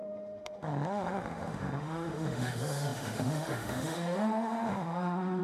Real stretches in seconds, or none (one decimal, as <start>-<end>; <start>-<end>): none

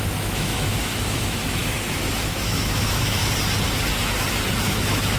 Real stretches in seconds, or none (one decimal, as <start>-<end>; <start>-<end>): 3.2-4.6

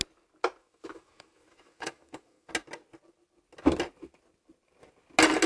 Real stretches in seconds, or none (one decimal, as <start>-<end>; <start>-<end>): 0.0-0.6; 2.5-5.5

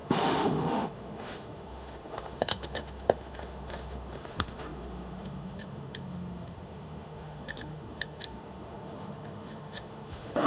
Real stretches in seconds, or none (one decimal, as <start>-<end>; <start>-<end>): none

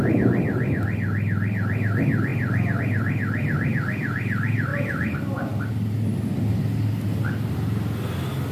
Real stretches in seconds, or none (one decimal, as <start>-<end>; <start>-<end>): 0.0-8.5